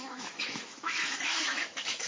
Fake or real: fake